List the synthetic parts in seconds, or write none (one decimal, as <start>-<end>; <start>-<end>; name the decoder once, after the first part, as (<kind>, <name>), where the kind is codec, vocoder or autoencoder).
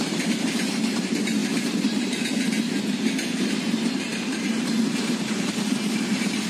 none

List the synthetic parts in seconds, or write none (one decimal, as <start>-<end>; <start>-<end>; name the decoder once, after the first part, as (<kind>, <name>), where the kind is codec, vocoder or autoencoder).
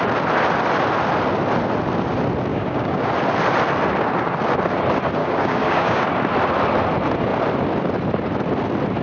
2.5-3.1 (codec, DAC); 5.2-6.1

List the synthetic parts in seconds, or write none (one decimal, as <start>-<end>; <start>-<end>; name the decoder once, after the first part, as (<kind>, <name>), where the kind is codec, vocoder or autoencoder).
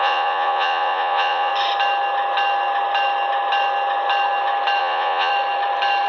0.0-1.5 (vocoder, Vocos); 4.8-5.3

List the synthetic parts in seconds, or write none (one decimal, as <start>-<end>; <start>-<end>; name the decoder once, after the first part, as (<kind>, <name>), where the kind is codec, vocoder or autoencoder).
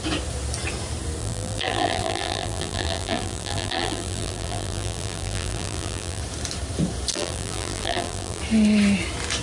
1.2-6.2 (vocoder, BigVGAN v2); 7.1-8.4